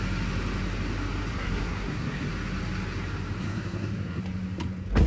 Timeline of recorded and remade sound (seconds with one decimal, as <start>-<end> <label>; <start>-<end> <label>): 0.0-1.3 recorded; 1.3-2.3 remade; 2.3-3.4 recorded; 3.4-4.2 remade; 4.2-5.1 recorded